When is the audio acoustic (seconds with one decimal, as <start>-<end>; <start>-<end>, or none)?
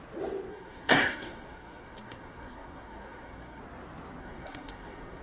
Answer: 0.0-0.5; 3.6-4.2